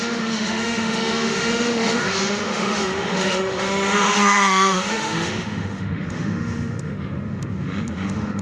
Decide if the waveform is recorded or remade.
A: remade